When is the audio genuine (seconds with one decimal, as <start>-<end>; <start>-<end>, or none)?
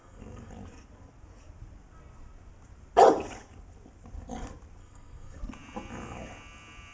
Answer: 0.5-4.8; 5.4-6.9